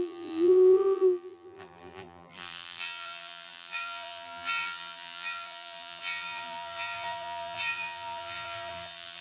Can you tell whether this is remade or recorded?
remade